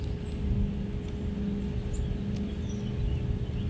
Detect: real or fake real